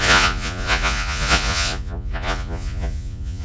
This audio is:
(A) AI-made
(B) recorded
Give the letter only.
A